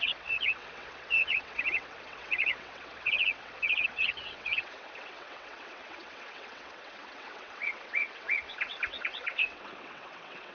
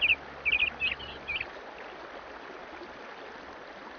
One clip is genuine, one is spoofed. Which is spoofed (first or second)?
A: first